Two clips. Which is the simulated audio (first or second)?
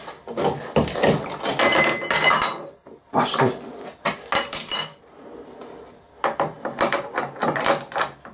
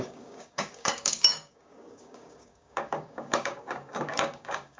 second